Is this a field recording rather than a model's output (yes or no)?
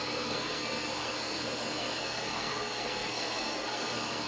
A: no